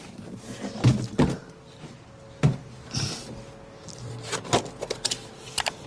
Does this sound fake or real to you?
real